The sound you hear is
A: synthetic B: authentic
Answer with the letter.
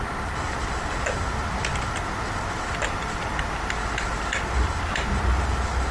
B